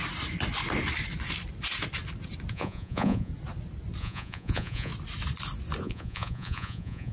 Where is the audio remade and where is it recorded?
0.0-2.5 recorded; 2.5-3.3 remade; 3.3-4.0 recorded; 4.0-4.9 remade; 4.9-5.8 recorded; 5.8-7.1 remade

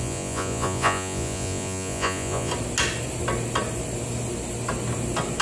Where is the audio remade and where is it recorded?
0.0-2.5 remade; 2.5-5.4 recorded

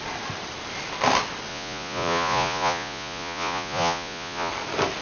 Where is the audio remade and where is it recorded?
0.0-1.5 recorded; 1.5-4.5 remade; 4.5-5.0 recorded

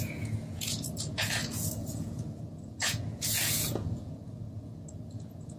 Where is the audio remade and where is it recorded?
0.0-5.6 remade

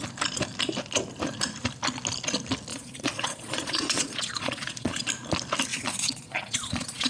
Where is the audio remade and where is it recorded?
0.0-2.7 recorded; 2.7-5.1 remade; 5.1-5.7 recorded; 5.7-7.1 remade